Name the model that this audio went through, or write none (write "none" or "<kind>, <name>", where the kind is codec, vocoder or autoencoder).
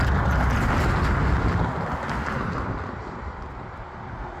none